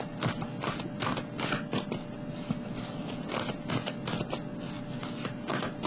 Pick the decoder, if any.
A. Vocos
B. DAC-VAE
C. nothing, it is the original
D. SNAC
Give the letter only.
C